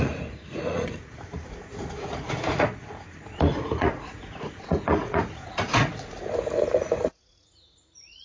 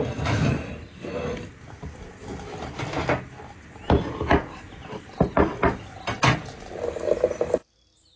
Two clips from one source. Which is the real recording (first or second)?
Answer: second